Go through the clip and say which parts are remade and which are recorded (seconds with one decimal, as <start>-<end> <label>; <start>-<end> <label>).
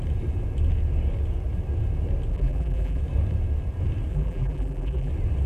0.0-2.3 recorded; 2.3-3.0 remade; 3.0-4.1 recorded; 4.1-5.1 remade; 5.1-5.5 recorded